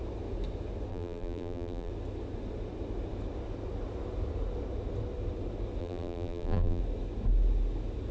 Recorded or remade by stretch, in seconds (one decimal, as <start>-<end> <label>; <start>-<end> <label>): 0.0-0.9 recorded; 0.9-1.9 remade; 1.9-5.8 recorded; 5.8-6.8 remade; 6.8-8.1 recorded